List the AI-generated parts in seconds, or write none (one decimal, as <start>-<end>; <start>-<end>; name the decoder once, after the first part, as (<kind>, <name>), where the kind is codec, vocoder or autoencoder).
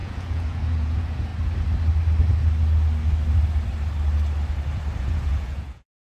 0.0-1.3 (vocoder, Vocos); 5.0-6.1